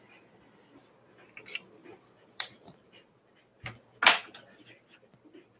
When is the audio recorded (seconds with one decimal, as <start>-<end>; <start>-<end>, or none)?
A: 0.0-1.8; 2.8-5.6